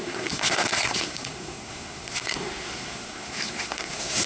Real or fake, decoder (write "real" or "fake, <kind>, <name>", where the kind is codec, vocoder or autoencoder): fake, codec, SNAC